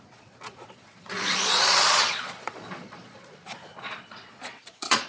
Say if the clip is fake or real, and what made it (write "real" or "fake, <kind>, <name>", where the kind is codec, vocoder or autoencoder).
fake, vocoder, Vocos